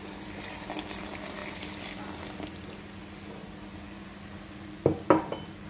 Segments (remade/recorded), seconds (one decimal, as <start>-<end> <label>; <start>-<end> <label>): 0.0-5.7 recorded

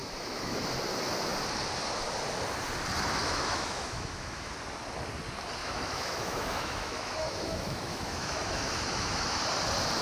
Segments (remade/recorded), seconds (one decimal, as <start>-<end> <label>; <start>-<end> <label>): 0.0-0.6 remade; 0.6-3.2 recorded; 3.2-4.5 remade; 4.5-5.6 recorded; 5.6-9.4 remade; 9.4-10.0 recorded